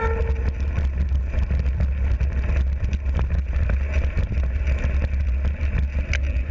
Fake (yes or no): no